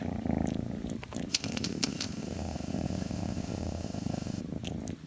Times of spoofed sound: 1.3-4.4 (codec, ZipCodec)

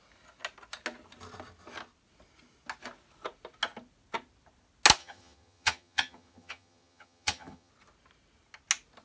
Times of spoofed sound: 5.0-7.7 (vocoder, HiFi-GAN)

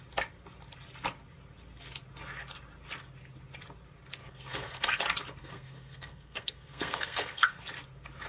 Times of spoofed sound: 4.2-5.0 (codec, SNAC); 5.4-7.6

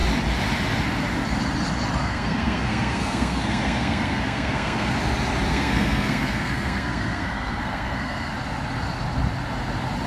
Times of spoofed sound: 2.0-4.9 (codec, SNAC); 5.5-8.3

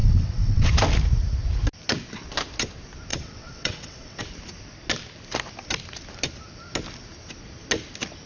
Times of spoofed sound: 0.0-0.7 (vocoder, WaveNeXt); 3.1-4.2

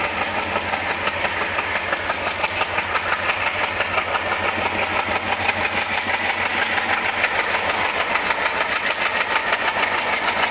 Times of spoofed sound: 9.4-10.5 (vocoder, Vocos)

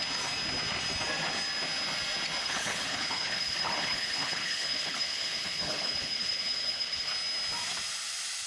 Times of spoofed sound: 2.4-7.1 (codec, HILCodec)

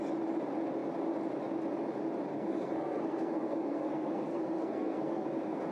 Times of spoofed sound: 2.3-5.7 (codec, SNAC)